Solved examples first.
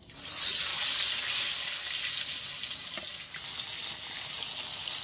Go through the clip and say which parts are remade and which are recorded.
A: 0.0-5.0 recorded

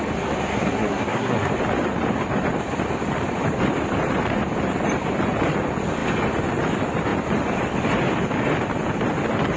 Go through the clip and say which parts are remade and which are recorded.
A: 0.0-0.5 recorded; 0.5-1.5 remade; 1.5-9.6 recorded

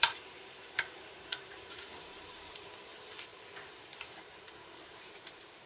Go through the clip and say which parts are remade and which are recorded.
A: 0.0-5.7 remade

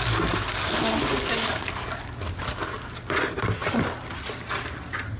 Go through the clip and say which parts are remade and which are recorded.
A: 0.0-5.2 recorded

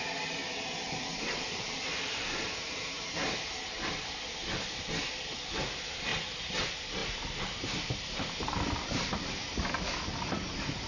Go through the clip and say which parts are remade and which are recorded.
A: 0.0-1.1 recorded; 1.1-2.8 remade; 2.8-7.0 recorded; 7.0-9.1 remade; 9.1-10.9 recorded

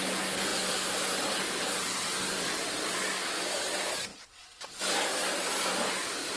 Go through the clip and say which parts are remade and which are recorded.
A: 0.0-6.4 recorded

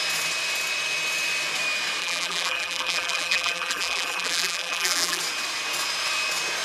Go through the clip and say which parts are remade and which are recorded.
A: 0.0-2.0 recorded; 2.0-5.2 remade; 5.2-6.6 recorded

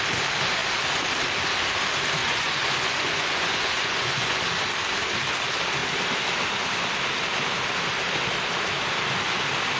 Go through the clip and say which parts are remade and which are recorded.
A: 0.0-2.2 recorded; 2.2-4.4 remade; 4.4-9.8 recorded